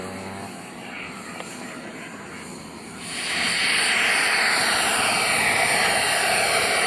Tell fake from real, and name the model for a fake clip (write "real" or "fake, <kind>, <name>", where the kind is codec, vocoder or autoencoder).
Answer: real